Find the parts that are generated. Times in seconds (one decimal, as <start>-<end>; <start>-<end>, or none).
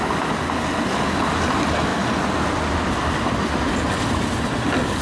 none